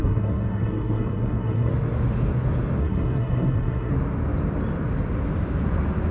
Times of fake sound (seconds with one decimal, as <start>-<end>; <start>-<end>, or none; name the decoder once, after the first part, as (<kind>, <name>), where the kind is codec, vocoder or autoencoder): 0.0-1.7 (codec, SNAC); 2.8-3.9